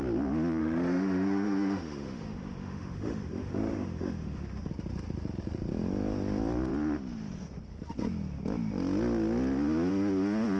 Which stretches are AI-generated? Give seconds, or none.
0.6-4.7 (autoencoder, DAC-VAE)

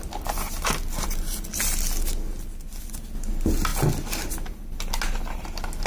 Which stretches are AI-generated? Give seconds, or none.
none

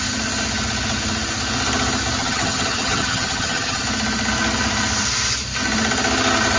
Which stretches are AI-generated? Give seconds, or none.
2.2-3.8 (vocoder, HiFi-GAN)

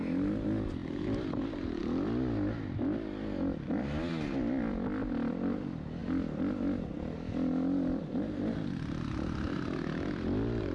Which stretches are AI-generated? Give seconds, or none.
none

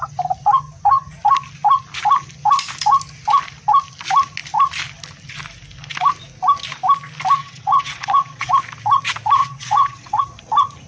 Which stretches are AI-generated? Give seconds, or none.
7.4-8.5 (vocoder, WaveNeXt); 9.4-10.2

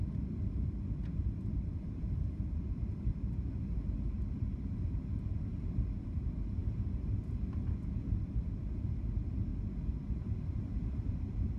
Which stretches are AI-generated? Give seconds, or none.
0.0-6.6 (vocoder, BigVGAN v2); 7.9-9.5; 10.2-11.6

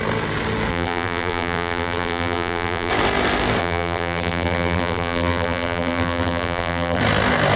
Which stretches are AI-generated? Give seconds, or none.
0.7-2.9 (vocoder, BigVGAN v2); 3.6-7.0

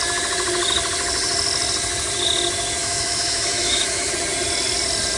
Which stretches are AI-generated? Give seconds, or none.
2.8-4.1 (autoencoder, DAC-VAE)